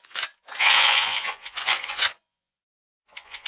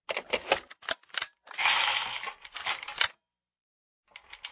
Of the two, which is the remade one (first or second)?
first